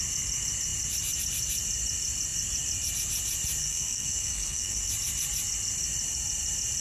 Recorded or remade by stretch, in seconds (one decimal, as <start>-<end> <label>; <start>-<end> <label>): 0.0-3.6 recorded; 3.6-4.9 remade; 4.9-6.8 recorded